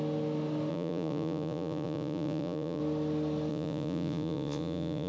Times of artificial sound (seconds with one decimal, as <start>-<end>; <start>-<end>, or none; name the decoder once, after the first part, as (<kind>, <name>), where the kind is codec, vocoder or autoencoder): 0.7-2.8 (vocoder, Vocos); 3.5-5.1